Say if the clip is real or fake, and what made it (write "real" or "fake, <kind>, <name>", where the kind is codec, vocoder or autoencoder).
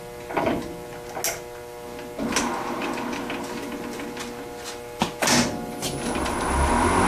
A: real